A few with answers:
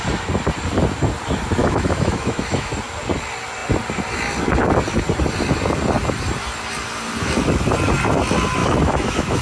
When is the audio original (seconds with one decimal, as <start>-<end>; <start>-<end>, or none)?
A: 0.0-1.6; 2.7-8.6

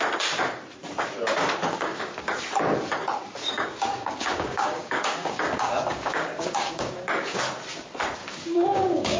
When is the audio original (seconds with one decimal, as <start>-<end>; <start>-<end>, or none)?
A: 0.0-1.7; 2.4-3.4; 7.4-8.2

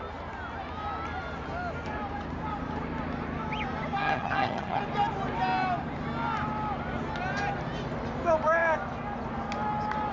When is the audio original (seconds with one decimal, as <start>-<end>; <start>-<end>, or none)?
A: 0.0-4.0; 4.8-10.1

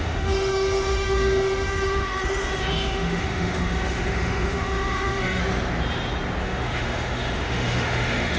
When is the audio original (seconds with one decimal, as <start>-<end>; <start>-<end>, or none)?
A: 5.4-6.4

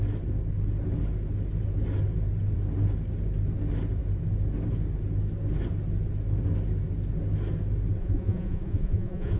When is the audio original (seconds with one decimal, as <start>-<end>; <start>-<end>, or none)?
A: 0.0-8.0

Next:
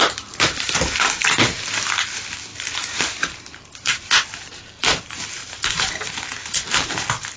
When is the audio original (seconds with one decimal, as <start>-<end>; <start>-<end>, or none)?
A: 0.0-0.9; 1.6-2.5; 4.2-5.4; 5.9-7.4

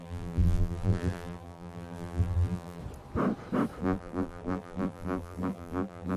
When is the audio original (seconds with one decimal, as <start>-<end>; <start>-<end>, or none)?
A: 2.8-3.8

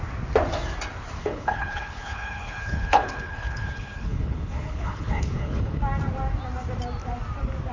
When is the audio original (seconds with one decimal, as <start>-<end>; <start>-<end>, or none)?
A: 0.0-1.2; 5.8-7.7